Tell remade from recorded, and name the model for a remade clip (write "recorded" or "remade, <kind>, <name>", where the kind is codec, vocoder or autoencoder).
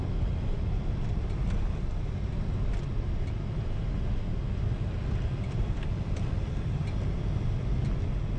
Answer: recorded